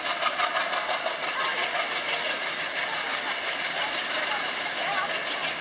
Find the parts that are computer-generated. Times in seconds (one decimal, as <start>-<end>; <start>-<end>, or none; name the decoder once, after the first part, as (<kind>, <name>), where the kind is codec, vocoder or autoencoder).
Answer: none